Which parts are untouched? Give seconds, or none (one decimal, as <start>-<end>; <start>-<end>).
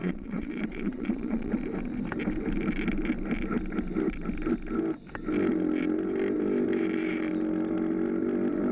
1.5-8.7